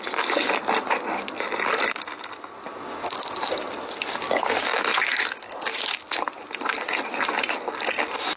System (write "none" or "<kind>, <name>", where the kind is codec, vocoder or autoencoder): none